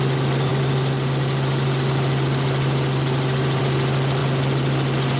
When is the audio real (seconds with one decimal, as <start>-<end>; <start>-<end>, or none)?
0.0-5.2